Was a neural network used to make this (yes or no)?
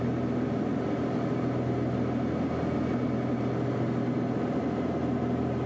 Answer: no